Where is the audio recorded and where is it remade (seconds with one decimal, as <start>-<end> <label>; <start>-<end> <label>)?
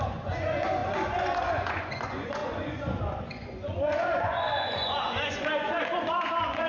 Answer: 0.0-6.7 remade